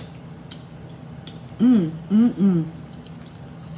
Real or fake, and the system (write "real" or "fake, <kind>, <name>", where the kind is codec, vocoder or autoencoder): real